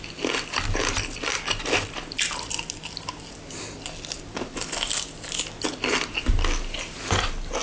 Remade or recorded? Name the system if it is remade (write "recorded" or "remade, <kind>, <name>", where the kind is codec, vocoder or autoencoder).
recorded